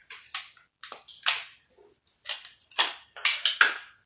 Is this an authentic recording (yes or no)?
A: yes